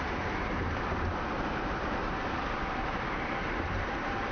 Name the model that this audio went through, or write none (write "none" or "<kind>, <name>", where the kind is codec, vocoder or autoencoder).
vocoder, BigVGAN v2